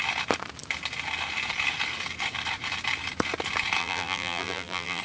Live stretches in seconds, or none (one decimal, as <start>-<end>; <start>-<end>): 0.0-3.8